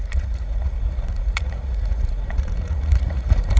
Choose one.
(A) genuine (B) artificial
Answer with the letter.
B